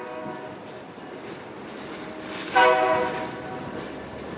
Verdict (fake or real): real